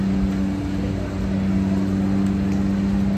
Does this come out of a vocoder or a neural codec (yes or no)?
no